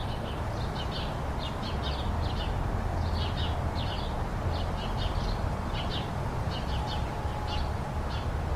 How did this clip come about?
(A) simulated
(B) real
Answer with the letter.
B